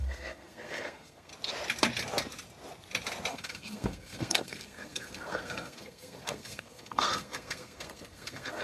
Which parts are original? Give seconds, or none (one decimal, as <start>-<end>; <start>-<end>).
1.3-3.3